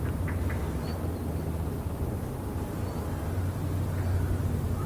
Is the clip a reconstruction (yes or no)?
no